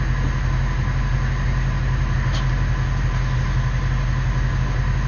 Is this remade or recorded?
recorded